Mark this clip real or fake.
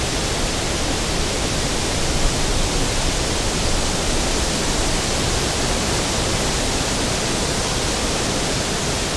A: real